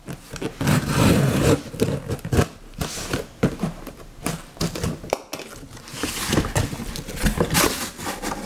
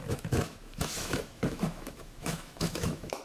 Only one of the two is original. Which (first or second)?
first